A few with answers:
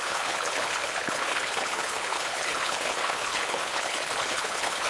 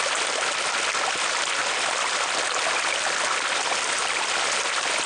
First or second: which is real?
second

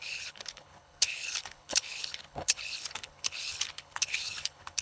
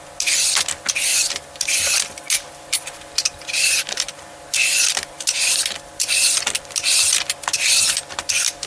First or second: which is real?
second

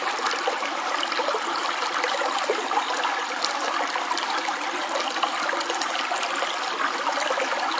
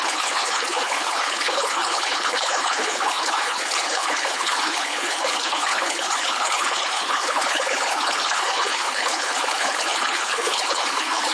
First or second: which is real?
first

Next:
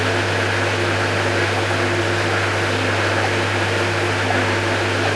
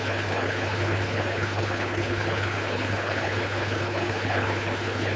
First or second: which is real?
first